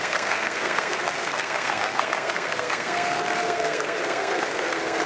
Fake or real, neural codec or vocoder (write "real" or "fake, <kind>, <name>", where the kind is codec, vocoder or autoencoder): fake, codec, SNAC